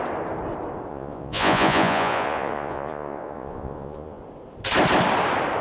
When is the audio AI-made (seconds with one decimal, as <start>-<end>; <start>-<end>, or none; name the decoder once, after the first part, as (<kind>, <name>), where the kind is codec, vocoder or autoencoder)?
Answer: 0.9-4.2 (vocoder, Vocos)